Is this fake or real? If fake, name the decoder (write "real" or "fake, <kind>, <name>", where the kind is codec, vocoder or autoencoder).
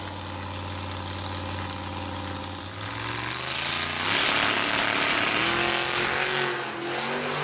real